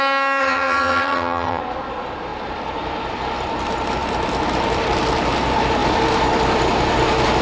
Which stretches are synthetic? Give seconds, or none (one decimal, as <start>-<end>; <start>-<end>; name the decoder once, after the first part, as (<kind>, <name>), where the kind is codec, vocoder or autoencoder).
0.4-1.6 (vocoder, HiFi-GAN)